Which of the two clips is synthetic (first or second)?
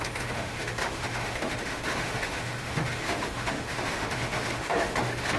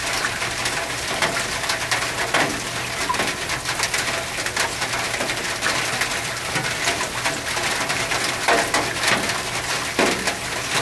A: first